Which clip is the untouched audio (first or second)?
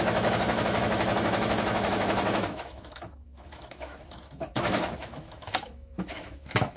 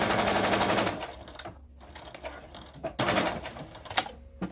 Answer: second